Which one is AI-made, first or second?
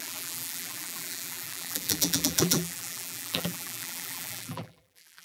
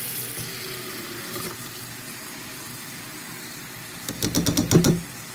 first